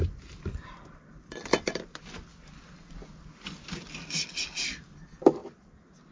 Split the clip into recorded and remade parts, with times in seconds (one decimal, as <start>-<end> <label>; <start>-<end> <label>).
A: 0.0-2.3 remade; 2.3-5.0 recorded; 5.0-5.4 remade; 5.4-6.1 recorded